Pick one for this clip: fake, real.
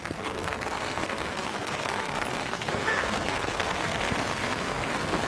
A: fake